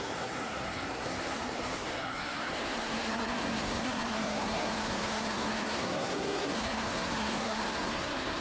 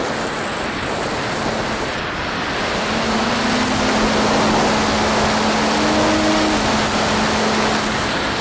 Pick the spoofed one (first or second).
first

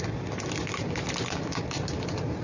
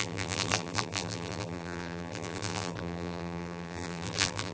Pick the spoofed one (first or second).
second